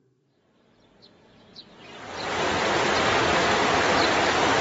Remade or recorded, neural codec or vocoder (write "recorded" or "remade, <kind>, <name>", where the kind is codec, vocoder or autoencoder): recorded